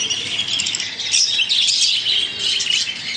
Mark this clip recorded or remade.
recorded